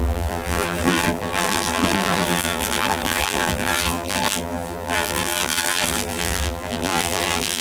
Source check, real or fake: fake